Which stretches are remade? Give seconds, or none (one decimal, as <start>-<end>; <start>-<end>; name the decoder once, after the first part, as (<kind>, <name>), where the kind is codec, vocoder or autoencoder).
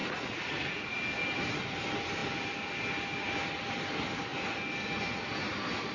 0.0-1.0 (vocoder, Vocos)